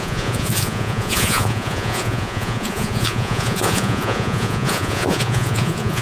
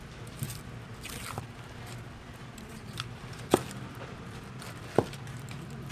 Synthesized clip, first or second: first